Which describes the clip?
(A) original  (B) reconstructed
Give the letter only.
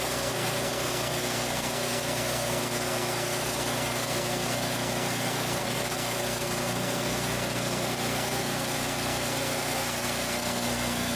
B